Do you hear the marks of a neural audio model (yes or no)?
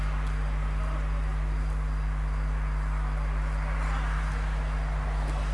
no